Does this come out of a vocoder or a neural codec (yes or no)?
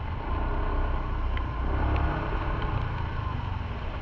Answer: no